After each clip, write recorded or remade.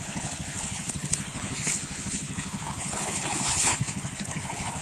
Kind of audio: remade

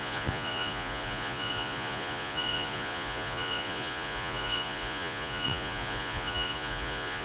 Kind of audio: remade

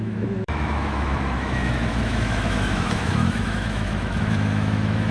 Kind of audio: remade